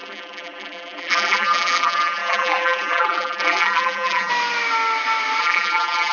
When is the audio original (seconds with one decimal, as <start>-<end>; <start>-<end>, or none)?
4.3-5.4

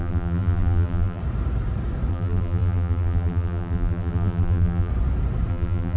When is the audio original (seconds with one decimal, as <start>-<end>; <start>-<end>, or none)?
1.2-2.1; 4.9-5.5

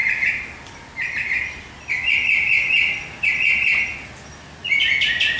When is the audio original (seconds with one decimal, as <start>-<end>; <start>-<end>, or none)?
0.0-5.4

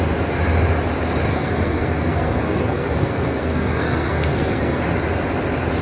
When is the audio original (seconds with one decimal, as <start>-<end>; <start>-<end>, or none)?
0.0-1.3; 4.8-5.8

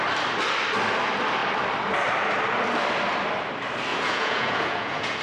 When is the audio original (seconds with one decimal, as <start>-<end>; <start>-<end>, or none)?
0.0-3.9

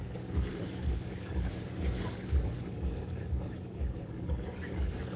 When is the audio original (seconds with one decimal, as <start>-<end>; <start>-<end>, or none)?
none

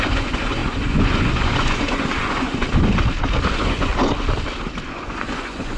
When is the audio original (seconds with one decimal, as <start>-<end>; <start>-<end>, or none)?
2.7-3.5; 3.9-4.9